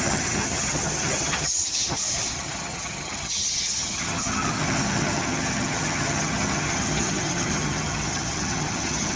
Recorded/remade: remade